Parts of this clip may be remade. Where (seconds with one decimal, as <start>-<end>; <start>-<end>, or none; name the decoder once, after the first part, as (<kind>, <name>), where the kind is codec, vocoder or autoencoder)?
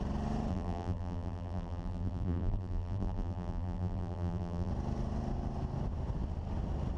0.5-4.7 (vocoder, BigVGAN v2)